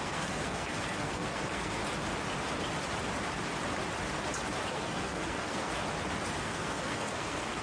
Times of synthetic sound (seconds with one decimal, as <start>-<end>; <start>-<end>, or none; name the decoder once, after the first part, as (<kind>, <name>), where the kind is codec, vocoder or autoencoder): 0.0-1.8 (codec, SNAC); 4.7-5.7; 6.4-7.6